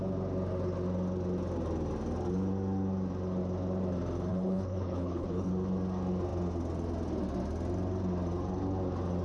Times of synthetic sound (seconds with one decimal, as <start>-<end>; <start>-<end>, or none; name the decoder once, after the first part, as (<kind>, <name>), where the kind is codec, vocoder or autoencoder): 4.3-5.5 (codec, HILCodec)